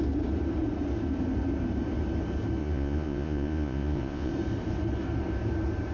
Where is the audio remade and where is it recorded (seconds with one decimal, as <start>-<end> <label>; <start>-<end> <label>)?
0.0-2.6 recorded; 2.6-4.3 remade; 4.3-5.9 recorded